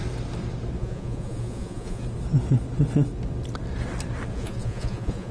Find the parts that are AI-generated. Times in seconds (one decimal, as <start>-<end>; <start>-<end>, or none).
0.8-2.0; 4.3-5.3